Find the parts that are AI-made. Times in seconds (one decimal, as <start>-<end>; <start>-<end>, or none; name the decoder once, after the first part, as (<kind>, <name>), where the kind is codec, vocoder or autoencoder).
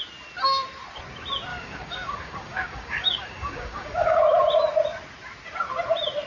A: 1.5-4.2 (codec, DAC)